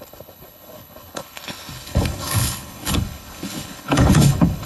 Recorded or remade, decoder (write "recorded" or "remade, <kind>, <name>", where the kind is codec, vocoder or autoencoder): remade, codec, HILCodec